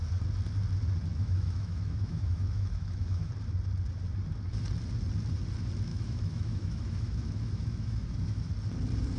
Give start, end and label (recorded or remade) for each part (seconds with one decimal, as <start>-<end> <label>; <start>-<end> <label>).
0.0-1.1 recorded; 1.1-3.3 remade; 3.3-5.9 recorded; 5.9-8.5 remade; 8.5-9.2 recorded

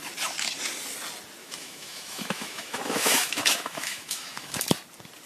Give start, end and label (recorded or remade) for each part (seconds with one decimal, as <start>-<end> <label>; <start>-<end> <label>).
0.0-1.4 recorded; 1.4-4.6 remade; 4.6-5.3 recorded

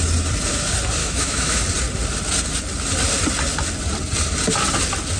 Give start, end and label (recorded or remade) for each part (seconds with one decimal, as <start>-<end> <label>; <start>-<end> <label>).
0.0-1.0 recorded; 1.0-1.6 remade; 1.6-5.2 recorded

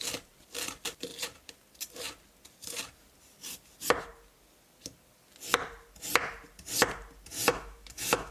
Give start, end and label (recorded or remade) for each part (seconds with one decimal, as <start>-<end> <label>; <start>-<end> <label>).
0.0-7.5 recorded; 7.5-8.3 remade

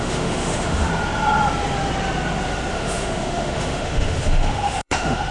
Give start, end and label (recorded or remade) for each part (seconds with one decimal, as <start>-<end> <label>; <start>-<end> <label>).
0.0-0.9 remade; 0.9-2.7 recorded; 2.7-5.3 remade

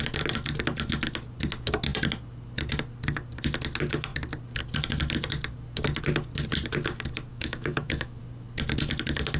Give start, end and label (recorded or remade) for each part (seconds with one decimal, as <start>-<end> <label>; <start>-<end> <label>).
0.0-7.3 recorded; 7.3-8.2 remade; 8.2-9.4 recorded

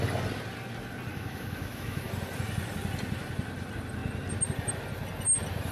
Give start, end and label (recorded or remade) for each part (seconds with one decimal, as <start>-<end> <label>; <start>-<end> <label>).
0.0-1.1 recorded; 1.1-2.1 remade; 2.1-5.7 recorded